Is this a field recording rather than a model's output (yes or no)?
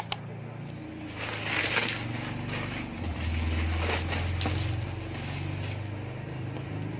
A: yes